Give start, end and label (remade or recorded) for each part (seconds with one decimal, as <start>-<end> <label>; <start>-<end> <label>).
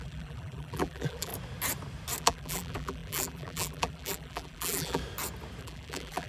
0.0-1.3 remade; 1.3-2.2 recorded; 2.2-5.0 remade; 5.0-5.6 recorded; 5.6-6.3 remade